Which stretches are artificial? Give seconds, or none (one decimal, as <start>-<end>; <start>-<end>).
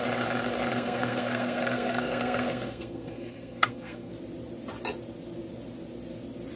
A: 0.7-4.1